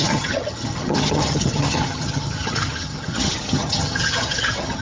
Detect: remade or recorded remade